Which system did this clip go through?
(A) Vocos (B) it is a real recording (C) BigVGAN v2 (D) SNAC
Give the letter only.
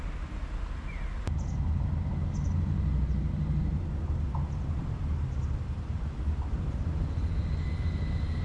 B